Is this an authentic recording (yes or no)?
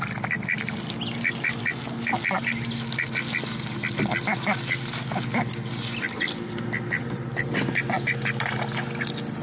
yes